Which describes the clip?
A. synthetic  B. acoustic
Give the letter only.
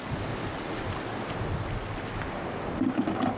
B